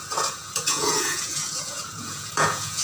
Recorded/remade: remade